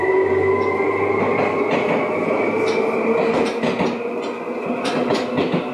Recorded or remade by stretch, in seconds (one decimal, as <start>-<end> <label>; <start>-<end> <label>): 0.0-5.7 recorded